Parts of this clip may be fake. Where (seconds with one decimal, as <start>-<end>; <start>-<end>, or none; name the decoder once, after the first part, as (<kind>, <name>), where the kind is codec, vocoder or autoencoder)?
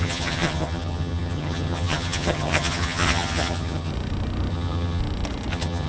0.0-3.9 (vocoder, HiFi-GAN); 4.5-5.0; 5.5-5.9